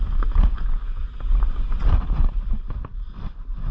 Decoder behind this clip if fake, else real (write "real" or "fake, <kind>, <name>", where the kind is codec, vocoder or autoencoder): real